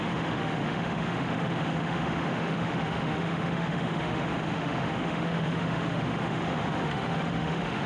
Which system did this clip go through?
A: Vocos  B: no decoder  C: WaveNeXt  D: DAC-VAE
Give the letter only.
D